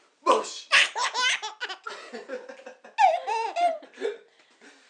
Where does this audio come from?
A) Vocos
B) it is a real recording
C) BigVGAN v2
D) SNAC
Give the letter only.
B